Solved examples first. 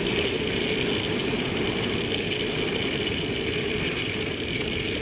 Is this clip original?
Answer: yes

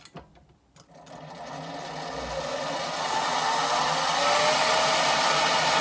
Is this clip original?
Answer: yes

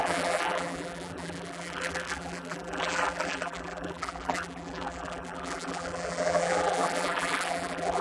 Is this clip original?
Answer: no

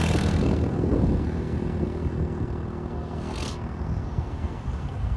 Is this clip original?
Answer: no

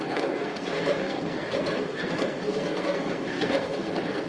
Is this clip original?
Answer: no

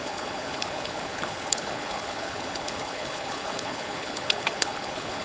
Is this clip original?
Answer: no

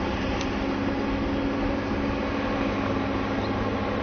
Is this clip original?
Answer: yes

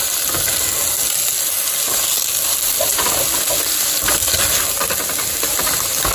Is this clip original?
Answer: yes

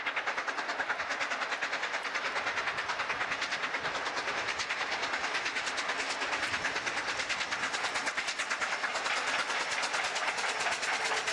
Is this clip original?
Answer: yes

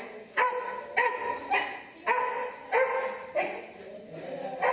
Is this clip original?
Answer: yes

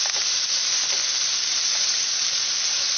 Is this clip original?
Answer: yes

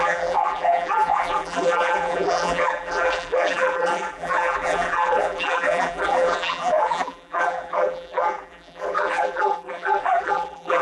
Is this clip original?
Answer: no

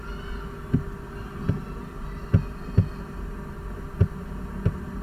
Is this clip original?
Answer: yes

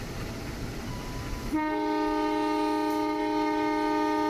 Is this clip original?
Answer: yes